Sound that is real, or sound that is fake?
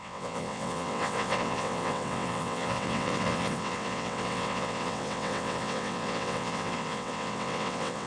fake